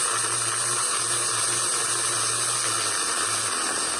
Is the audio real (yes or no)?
yes